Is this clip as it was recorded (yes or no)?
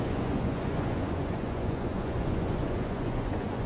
no